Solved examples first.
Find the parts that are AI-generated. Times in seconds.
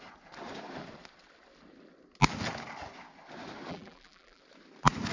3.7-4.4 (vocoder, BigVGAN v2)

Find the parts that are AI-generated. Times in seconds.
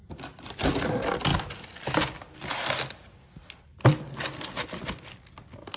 0.0-0.9 (vocoder, BigVGAN v2)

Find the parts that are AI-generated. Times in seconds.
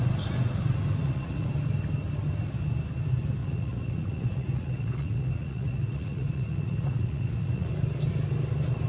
1.0-1.5 (vocoder, Vocos); 3.4-7.7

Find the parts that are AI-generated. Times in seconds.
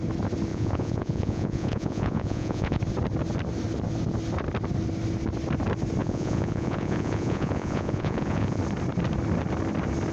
0.5-2.8 (vocoder, Vocos); 6.0-8.6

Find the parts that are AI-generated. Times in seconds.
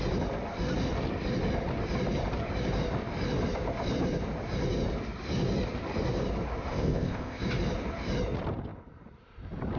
6.7-7.4 (codec, ZipCodec)